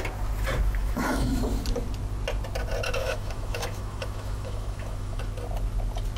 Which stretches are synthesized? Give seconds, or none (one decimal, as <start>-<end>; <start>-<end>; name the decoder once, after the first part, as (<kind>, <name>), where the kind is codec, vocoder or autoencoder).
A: 0.8-1.4 (autoencoder, DAC-VAE); 3.0-5.2